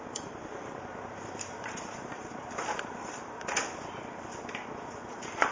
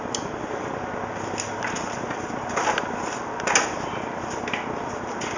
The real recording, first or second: second